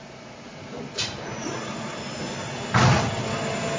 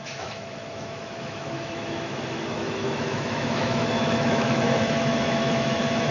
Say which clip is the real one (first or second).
first